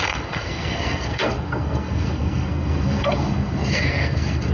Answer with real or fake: fake